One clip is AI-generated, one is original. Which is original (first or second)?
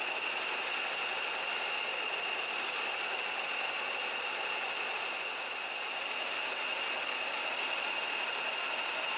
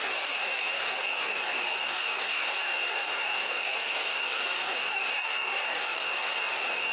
first